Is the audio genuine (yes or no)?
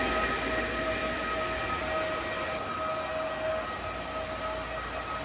yes